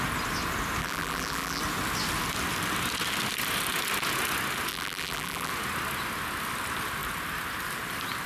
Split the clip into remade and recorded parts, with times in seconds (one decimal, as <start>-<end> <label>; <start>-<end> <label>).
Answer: 0.0-0.8 recorded; 0.8-1.6 remade; 1.6-4.7 recorded; 4.7-5.5 remade; 5.5-8.3 recorded